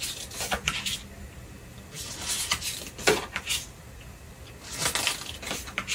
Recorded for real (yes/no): yes